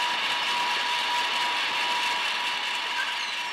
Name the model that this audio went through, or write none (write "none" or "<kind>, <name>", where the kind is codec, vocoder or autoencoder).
none